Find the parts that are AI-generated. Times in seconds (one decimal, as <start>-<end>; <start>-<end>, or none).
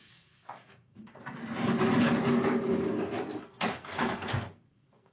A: 0.0-1.4; 3.4-5.1